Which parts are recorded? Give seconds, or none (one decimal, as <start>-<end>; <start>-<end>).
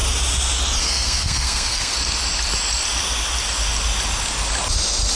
0.0-0.8; 1.9-5.2